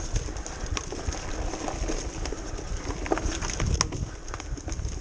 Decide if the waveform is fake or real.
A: real